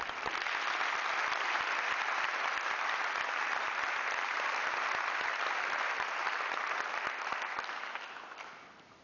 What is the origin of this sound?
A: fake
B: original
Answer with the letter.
B